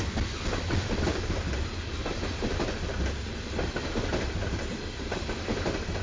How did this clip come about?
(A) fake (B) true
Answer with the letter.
B